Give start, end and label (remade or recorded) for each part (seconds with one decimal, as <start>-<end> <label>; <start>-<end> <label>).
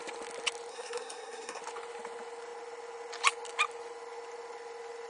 0.0-0.7 recorded; 0.7-1.6 remade; 1.6-5.1 recorded